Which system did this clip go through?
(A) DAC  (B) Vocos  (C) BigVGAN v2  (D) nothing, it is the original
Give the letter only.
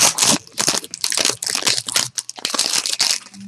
D